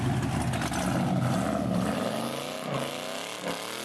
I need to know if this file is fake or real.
real